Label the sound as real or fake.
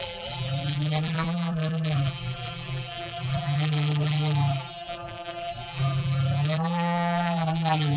fake